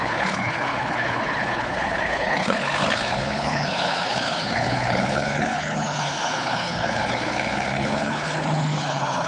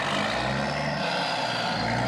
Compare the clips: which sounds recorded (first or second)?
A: second